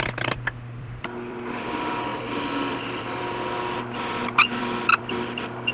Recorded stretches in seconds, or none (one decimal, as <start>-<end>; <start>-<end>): none